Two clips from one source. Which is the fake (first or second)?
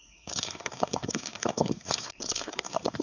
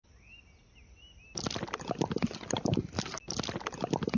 first